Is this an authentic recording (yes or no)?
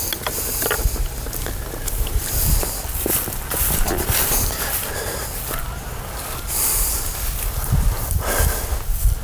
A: yes